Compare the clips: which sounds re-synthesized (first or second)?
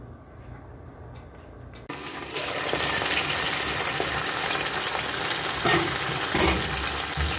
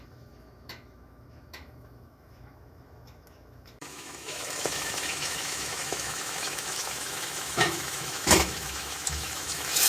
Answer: second